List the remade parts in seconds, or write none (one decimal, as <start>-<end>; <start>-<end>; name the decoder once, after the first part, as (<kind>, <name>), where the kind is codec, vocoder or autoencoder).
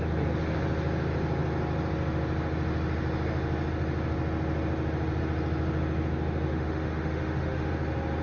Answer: 6.5-7.7 (autoencoder, DAC-VAE)